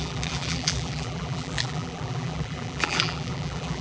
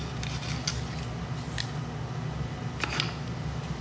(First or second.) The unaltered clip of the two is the second